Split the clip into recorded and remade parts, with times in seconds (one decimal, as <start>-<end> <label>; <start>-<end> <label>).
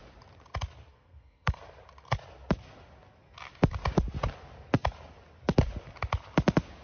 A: 0.0-0.9 recorded; 0.9-1.6 remade; 1.6-6.8 recorded